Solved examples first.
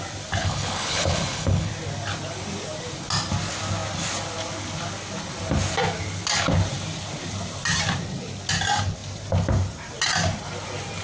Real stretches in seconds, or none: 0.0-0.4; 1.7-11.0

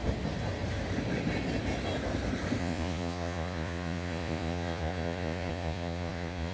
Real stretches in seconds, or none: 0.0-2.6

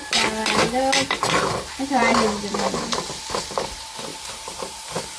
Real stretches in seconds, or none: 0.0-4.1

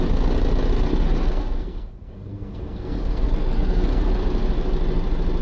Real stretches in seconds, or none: 0.0-0.9; 4.1-5.4

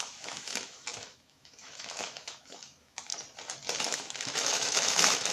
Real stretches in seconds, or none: 3.1-3.8

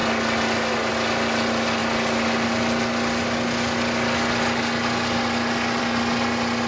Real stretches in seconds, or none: 0.0-6.7

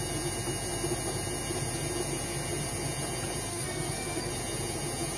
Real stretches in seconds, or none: 0.0-3.5; 4.3-5.2